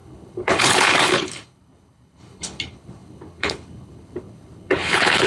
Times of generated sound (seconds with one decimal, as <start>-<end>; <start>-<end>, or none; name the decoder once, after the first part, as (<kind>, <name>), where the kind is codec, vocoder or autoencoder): 0.0-5.3 (codec, HILCodec)